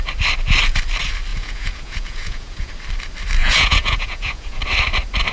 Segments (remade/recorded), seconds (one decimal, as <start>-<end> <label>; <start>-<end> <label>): 0.0-1.3 recorded; 1.3-2.7 remade; 2.7-3.4 recorded; 3.4-4.6 remade; 4.6-5.3 recorded